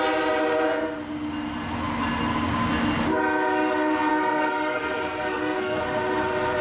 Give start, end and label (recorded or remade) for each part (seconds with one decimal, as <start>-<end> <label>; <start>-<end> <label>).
0.0-4.1 recorded; 4.1-5.8 remade; 5.8-6.6 recorded